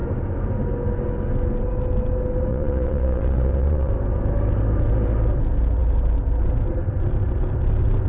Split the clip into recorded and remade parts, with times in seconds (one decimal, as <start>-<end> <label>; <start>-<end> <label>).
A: 0.0-2.5 recorded; 2.5-3.9 remade; 3.9-8.1 recorded